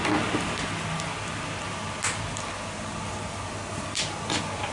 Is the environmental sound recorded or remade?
recorded